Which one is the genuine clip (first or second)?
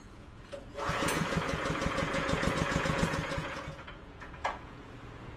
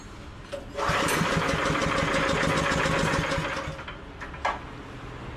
second